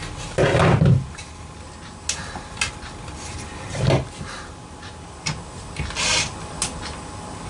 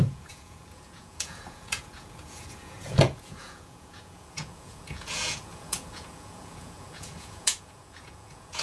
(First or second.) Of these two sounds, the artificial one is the second